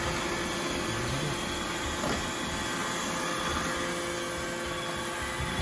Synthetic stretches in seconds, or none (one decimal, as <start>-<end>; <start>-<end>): none